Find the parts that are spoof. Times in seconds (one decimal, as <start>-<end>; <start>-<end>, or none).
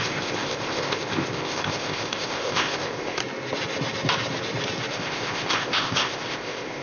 0.0-3.2; 4.9-6.8